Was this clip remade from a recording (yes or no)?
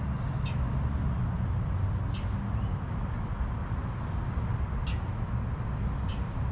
no